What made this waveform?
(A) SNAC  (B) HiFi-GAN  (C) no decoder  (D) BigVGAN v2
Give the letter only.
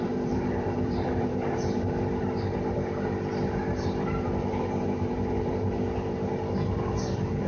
D